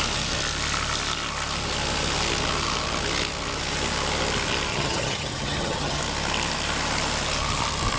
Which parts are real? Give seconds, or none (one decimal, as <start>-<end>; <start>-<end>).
0.0-4.7; 6.0-8.0